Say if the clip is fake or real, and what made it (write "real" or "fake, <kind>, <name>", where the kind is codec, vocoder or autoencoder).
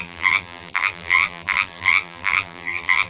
fake, vocoder, BigVGAN v2